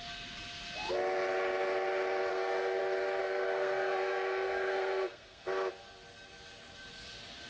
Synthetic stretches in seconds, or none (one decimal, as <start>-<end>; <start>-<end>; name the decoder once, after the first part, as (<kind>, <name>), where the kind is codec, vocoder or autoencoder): 2.3-2.8 (codec, SNAC); 3.2-5.4